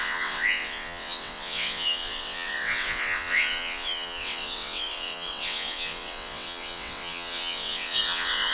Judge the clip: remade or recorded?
remade